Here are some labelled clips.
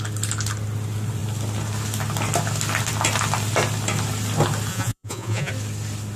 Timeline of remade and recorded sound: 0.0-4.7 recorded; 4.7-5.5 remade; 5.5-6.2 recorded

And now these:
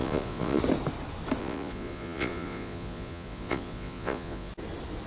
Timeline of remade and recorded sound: 0.0-0.6 remade; 0.6-1.4 recorded; 1.4-4.5 remade; 4.5-5.1 recorded

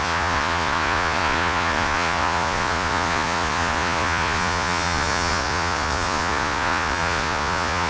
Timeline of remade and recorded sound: 0.0-7.9 remade

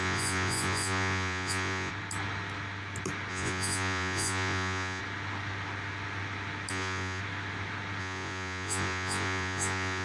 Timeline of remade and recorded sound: 0.0-1.9 remade; 1.9-3.3 recorded; 3.3-5.0 remade; 5.0-6.7 recorded; 6.7-7.2 remade; 7.2-8.0 recorded; 8.0-10.0 remade

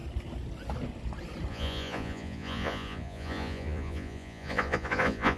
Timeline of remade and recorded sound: 0.0-1.5 recorded; 1.5-5.4 remade